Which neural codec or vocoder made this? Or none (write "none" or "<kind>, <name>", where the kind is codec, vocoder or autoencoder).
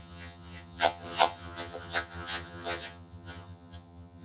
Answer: vocoder, HiFi-GAN